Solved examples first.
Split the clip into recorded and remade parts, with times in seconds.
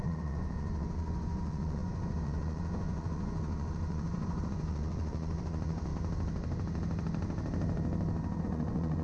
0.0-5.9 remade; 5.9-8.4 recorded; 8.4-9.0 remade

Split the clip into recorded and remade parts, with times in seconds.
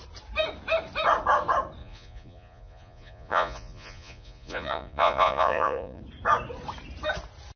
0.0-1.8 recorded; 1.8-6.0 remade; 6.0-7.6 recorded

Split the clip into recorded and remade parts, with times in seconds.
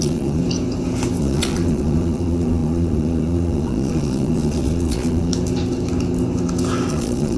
0.0-0.4 remade; 0.4-1.2 recorded; 1.2-5.3 remade; 5.3-6.9 recorded; 6.9-7.4 remade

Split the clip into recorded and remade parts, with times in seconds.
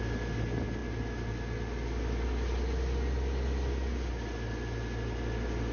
0.0-5.7 recorded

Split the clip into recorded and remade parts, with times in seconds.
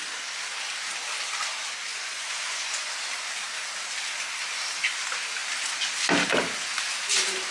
0.0-1.9 recorded; 1.9-2.9 remade; 2.9-7.5 recorded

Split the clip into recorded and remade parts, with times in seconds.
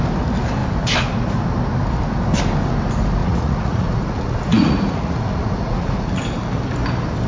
0.0-3.2 recorded; 3.2-6.2 remade; 6.2-7.3 recorded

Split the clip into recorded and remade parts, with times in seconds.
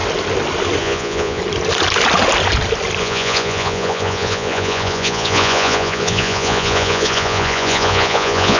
0.0-0.8 recorded; 0.8-1.4 remade; 1.4-3.0 recorded; 3.0-8.6 remade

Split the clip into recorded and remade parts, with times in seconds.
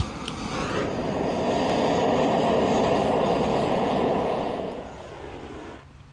0.0-3.5 recorded; 3.5-5.1 remade; 5.1-6.1 recorded